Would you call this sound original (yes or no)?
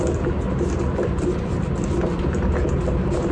yes